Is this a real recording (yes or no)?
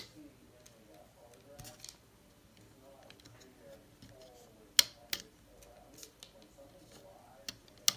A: yes